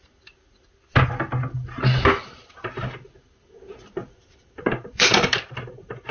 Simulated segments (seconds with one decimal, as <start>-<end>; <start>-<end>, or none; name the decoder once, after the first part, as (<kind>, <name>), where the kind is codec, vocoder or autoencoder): 4.0-6.1 (vocoder, BigVGAN v2)